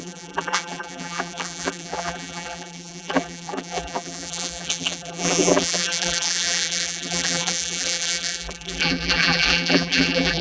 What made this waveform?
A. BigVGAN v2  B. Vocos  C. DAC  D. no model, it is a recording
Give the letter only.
A